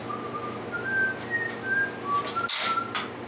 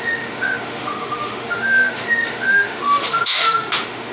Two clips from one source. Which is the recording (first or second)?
first